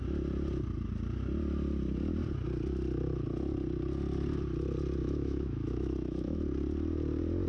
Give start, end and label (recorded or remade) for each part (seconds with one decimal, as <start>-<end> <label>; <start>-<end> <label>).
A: 0.0-5.0 recorded; 5.0-6.4 remade; 6.4-7.5 recorded

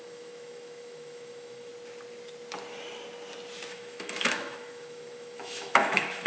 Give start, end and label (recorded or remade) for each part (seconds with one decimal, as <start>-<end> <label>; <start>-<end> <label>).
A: 0.0-1.7 remade; 1.7-3.7 recorded; 3.7-6.3 remade

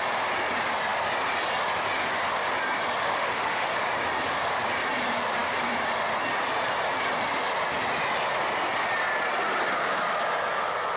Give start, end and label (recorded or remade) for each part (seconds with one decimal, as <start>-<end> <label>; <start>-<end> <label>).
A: 0.0-3.0 recorded; 3.0-3.8 remade; 3.8-11.0 recorded

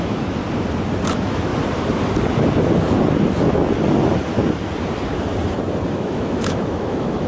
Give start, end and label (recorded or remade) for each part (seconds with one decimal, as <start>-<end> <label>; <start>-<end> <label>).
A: 0.0-0.4 remade; 0.4-1.1 recorded; 1.1-1.5 remade; 1.5-5.9 recorded; 5.9-7.3 remade

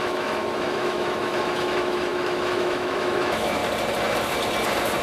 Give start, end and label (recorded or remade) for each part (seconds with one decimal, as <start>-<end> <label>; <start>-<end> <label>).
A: 0.0-3.6 remade; 3.6-5.0 recorded